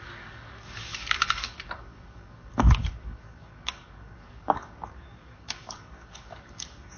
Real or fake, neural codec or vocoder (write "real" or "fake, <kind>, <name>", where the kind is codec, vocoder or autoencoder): fake, codec, DAC